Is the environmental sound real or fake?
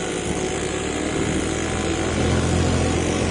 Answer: real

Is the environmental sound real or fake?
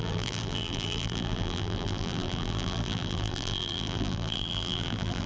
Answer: fake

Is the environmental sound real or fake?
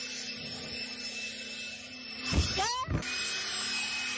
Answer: real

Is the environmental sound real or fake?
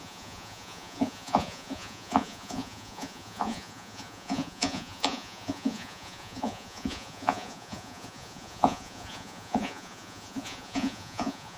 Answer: fake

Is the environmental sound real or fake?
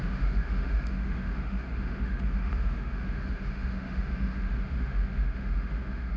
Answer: fake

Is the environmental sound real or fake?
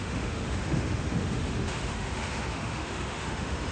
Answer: fake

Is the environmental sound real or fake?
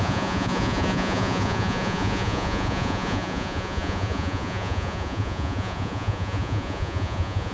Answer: fake